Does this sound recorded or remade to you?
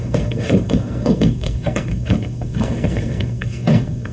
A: remade